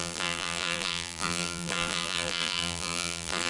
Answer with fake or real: fake